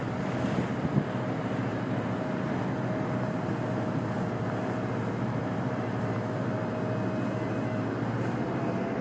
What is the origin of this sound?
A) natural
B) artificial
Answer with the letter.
A